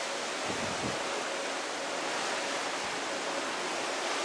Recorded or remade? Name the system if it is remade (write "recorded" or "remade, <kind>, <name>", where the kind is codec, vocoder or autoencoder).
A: recorded